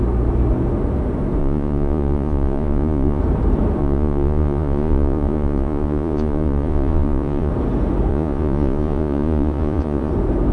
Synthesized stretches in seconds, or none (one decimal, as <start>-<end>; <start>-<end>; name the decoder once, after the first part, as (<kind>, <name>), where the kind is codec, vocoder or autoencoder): 1.4-3.2 (vocoder, Vocos); 3.8-7.5; 8.1-10.1